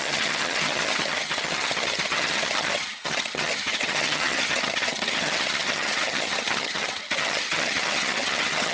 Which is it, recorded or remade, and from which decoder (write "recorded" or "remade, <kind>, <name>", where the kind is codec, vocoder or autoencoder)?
remade, vocoder, HiFi-GAN